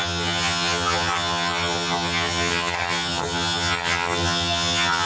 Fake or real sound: fake